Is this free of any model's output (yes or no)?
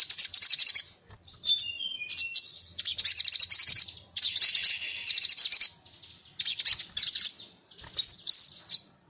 yes